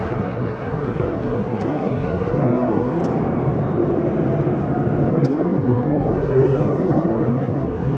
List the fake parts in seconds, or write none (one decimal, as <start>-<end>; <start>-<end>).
0.0-3.0; 5.1-8.0